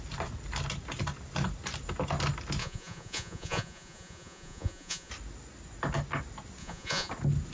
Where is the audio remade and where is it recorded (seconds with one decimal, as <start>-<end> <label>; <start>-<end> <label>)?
0.0-2.6 recorded; 2.6-5.1 remade; 5.1-6.6 recorded; 6.6-7.1 remade; 7.1-7.5 recorded